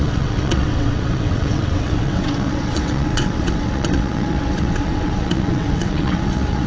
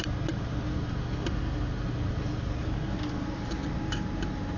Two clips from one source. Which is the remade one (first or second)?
first